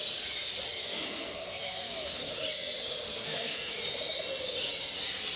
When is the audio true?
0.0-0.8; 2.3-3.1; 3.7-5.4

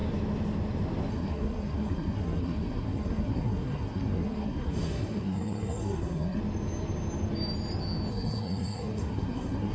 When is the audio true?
0.0-1.1; 6.4-8.1

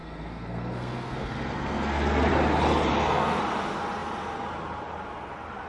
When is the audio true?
2.3-2.9; 3.4-5.7

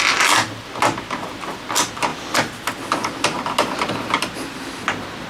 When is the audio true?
0.0-5.3

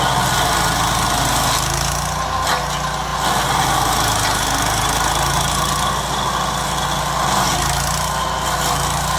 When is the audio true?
0.0-9.2